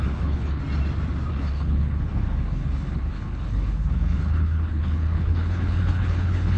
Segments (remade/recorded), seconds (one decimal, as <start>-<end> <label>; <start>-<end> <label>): 0.0-0.6 remade; 0.6-1.3 recorded; 1.3-6.6 remade